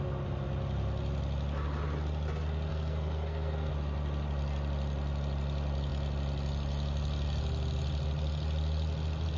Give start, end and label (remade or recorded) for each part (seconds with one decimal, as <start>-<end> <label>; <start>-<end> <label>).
0.0-2.7 recorded; 2.7-3.7 remade; 3.7-9.4 recorded